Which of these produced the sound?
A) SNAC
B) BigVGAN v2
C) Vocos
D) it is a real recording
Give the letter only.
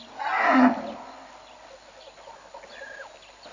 D